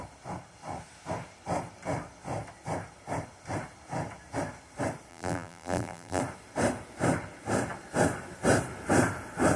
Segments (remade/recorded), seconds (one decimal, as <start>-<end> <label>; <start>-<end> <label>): 0.0-5.1 recorded; 5.1-6.2 remade; 6.2-9.6 recorded